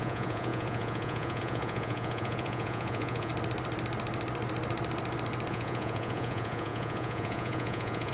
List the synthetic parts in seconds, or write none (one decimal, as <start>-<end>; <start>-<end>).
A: 0.0-3.3; 5.5-8.1